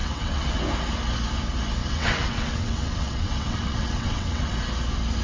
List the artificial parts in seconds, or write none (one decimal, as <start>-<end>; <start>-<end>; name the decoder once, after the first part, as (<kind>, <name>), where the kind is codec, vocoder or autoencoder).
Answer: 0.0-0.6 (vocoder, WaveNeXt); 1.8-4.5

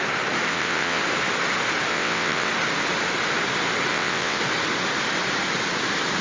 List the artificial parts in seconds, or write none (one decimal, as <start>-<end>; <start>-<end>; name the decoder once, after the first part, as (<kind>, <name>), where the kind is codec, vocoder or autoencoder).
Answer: 0.5-1.0 (vocoder, WaveNeXt); 1.9-2.5; 3.9-4.4

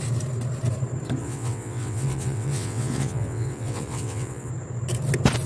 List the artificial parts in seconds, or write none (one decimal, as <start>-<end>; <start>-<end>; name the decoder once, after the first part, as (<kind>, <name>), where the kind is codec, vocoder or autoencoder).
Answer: 1.2-4.5 (vocoder, WaveNeXt)

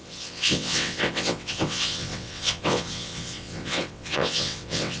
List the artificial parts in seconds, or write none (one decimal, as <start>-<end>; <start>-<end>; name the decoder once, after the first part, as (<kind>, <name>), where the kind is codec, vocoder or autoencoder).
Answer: 0.0-5.0 (vocoder, WaveNeXt)

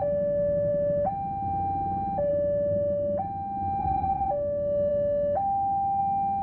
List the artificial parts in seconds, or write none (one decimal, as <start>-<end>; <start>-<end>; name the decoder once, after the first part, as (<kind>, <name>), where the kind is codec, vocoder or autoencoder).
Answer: 3.8-4.3 (vocoder, WaveNeXt)

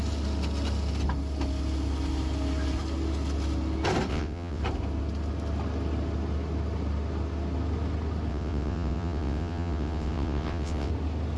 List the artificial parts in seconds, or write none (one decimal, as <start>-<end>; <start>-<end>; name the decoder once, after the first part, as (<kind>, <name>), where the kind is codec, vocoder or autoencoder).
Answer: 4.1-4.6 (vocoder, WaveNeXt); 8.3-10.9